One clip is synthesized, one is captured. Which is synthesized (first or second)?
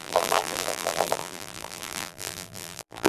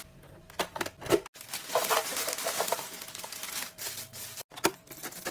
first